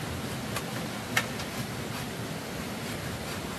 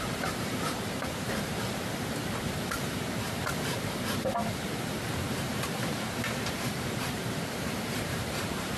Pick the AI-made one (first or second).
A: second